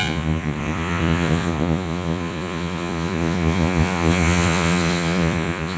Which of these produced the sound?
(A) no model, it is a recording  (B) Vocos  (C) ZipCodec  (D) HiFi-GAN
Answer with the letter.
B